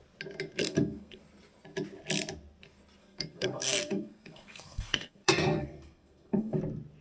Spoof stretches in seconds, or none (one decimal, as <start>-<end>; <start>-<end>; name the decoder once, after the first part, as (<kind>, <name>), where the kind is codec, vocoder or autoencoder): 0.6-1.2 (codec, SNAC); 3.0-6.6